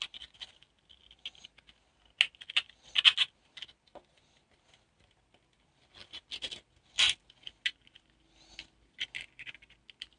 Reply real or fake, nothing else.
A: real